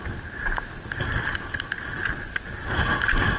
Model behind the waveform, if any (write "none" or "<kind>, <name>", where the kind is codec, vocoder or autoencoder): none